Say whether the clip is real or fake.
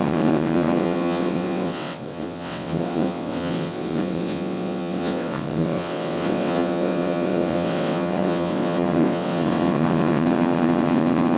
fake